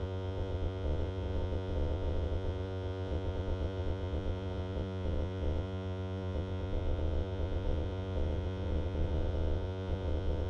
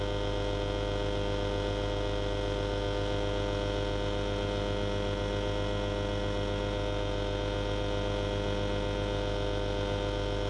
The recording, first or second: second